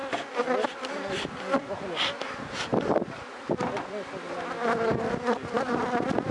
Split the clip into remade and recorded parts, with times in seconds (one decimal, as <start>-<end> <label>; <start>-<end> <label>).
0.0-6.3 recorded